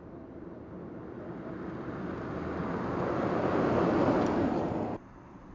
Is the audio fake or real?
real